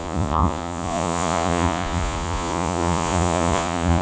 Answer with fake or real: fake